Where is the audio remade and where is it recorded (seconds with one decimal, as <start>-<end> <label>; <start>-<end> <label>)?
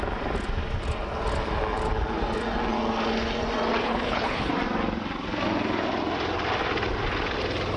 0.0-3.8 recorded; 3.8-4.5 remade; 4.5-7.8 recorded